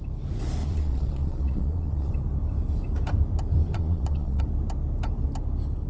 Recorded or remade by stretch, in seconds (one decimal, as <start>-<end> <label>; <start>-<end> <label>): 0.0-0.6 recorded; 0.6-2.1 remade; 2.1-3.7 recorded; 3.7-4.4 remade; 4.4-5.9 recorded